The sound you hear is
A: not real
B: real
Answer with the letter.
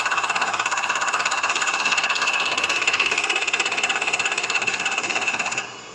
A